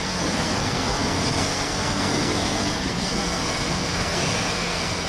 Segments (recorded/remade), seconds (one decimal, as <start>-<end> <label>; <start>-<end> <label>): 0.0-5.1 remade